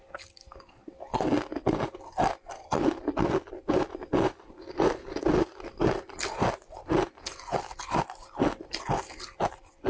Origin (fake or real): real